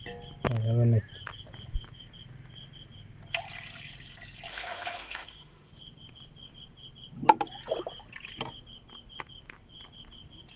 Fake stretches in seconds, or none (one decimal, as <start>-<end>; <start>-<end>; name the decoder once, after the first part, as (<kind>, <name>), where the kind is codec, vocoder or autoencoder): 4.5-5.7 (autoencoder, DAC-VAE)

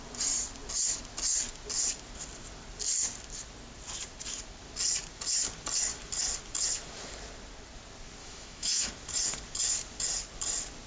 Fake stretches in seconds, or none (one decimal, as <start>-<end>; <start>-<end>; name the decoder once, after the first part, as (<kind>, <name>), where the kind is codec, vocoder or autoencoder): 8.2-8.9 (autoencoder, DAC-VAE)

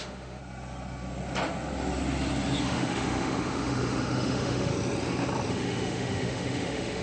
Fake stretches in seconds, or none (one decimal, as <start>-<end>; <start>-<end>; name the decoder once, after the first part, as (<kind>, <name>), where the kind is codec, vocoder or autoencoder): 0.0-0.4 (autoencoder, DAC-VAE); 2.6-4.7; 5.5-7.0

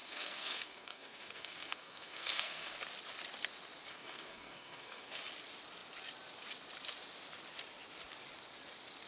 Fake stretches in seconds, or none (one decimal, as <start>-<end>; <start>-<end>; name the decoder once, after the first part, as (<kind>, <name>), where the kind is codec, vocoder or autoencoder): 0.0-2.8 (codec, SNAC); 3.9-5.2

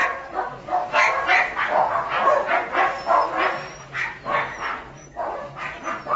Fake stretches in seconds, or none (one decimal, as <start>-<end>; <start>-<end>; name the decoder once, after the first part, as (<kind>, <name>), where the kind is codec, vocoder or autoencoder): none

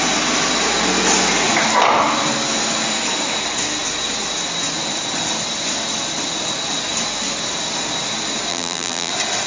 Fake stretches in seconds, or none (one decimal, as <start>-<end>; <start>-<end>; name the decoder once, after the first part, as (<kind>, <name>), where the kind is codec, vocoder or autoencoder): 8.5-9.1 (vocoder, BigVGAN v2)

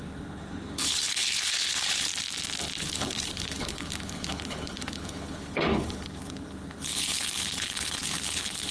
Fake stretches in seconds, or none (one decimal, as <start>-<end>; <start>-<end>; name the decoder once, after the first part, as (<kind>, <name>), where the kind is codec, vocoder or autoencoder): 0.0-2.1 (codec, HILCodec); 2.8-8.7

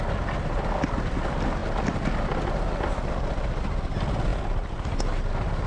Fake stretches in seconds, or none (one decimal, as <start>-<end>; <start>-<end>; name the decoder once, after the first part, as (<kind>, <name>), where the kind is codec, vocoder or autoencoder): none